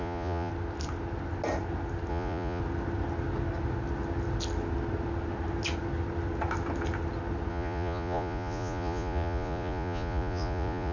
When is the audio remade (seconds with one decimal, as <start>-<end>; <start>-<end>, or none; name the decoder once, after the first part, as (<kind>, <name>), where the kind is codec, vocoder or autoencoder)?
0.0-0.5 (vocoder, Vocos); 2.1-2.6; 7.5-10.9

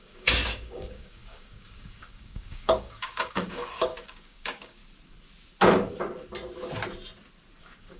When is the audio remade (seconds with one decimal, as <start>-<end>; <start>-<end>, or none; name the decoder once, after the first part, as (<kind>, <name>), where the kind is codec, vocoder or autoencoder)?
0.0-4.8 (codec, DAC); 7.6-8.0

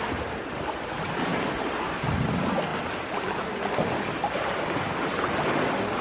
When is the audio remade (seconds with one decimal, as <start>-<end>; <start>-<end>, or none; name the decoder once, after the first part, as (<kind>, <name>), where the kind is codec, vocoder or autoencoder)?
none

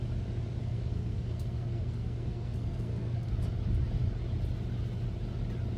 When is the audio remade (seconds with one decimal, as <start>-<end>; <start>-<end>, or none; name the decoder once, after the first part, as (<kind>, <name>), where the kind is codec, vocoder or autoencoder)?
0.6-3.3 (codec, SNAC)

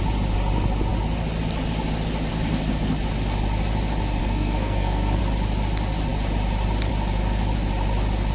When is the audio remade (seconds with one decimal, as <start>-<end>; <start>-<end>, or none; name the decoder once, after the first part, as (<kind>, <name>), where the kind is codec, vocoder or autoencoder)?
4.2-5.2 (codec, SNAC)

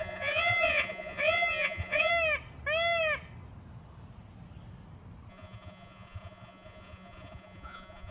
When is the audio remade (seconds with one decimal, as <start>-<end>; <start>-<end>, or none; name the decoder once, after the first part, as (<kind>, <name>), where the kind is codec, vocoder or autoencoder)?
0.0-2.1 (vocoder, Vocos); 5.3-8.1

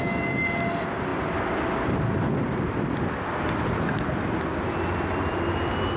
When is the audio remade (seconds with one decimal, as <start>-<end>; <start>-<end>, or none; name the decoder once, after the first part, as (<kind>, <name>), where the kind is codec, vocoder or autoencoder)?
none

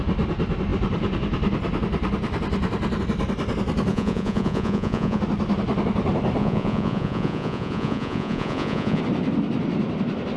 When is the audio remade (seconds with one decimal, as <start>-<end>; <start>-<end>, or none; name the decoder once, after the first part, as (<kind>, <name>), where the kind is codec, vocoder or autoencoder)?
3.9-5.2 (vocoder, Vocos); 6.4-9.0